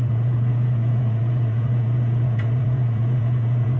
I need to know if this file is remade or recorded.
remade